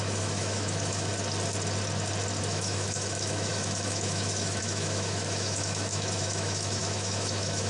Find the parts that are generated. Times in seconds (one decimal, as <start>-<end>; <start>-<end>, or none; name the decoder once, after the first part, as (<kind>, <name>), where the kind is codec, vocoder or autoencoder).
0.0-1.1 (autoencoder, DAC-VAE); 2.4-7.7